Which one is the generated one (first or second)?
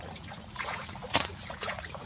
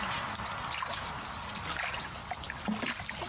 first